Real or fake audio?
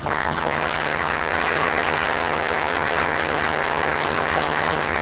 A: fake